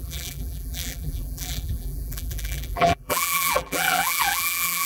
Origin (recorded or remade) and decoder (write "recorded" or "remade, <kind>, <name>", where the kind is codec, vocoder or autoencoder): remade, vocoder, BigVGAN v2